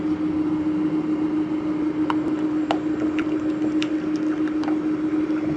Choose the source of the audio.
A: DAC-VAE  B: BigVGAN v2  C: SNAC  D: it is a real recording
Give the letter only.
D